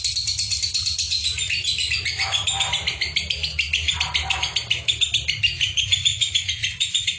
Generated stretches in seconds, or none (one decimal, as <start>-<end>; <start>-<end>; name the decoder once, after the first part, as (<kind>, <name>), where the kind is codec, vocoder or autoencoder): 6.1-7.2 (vocoder, Vocos)